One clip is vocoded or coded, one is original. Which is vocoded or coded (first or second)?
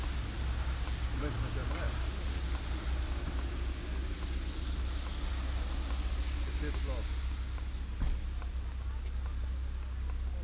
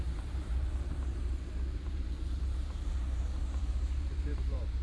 second